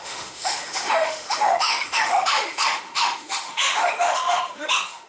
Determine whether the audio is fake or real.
fake